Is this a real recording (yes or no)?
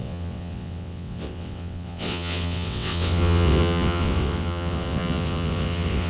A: no